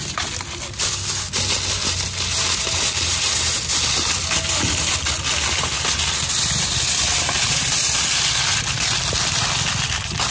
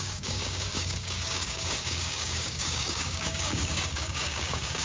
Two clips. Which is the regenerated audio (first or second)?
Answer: second